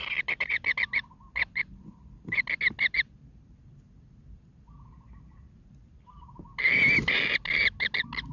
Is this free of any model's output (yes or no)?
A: yes